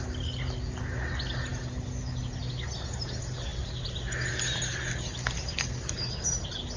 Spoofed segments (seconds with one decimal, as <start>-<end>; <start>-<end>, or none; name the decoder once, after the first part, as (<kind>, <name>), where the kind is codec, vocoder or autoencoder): none